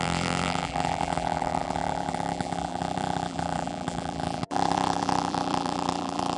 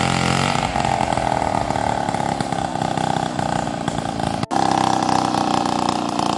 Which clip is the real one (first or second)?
second